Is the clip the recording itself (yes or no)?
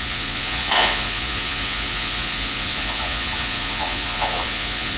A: no